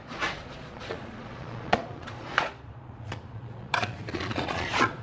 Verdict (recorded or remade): remade